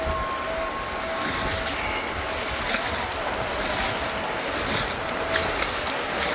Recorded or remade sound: recorded